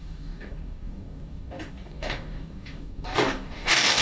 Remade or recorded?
remade